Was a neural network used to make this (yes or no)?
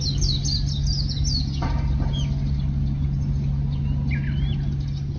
no